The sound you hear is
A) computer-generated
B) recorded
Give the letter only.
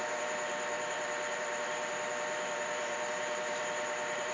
A